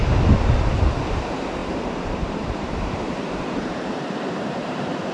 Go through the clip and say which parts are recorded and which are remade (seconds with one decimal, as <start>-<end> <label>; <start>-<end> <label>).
0.0-0.6 recorded; 0.6-5.1 remade